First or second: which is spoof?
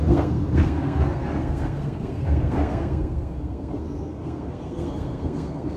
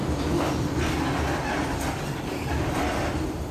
first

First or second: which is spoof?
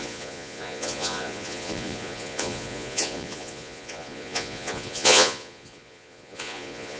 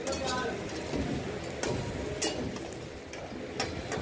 first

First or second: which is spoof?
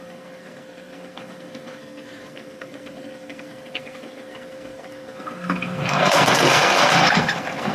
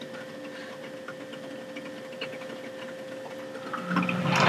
first